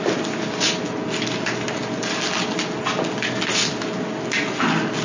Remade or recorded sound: recorded